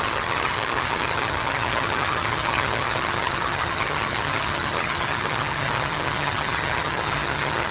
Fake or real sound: fake